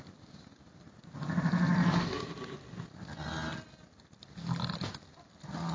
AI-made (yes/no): no